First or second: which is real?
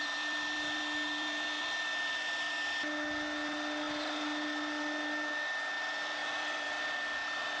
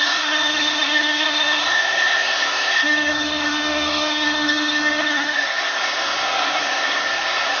first